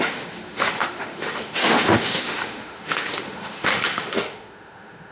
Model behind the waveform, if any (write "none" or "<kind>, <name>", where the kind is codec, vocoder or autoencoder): autoencoder, DAC-VAE